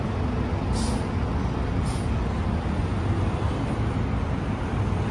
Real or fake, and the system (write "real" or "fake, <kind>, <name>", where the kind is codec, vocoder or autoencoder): real